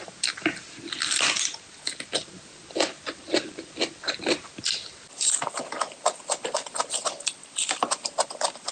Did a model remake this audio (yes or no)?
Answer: no